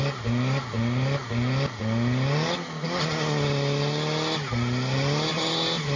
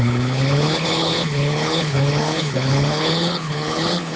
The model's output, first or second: second